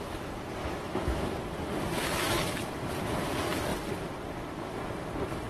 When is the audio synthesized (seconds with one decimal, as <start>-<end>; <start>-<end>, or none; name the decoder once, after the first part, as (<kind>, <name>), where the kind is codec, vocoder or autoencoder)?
0.6-1.3 (autoencoder, DAC-VAE); 2.0-2.7